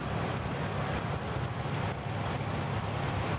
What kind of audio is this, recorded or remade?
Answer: recorded